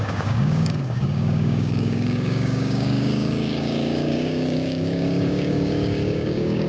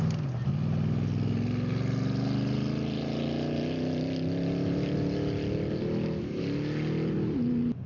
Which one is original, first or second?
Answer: second